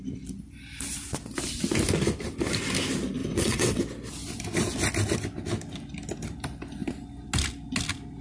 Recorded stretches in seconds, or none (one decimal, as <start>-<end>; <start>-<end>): 0.0-3.2; 3.8-8.2